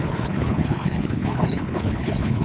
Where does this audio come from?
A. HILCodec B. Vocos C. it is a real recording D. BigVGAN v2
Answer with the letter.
A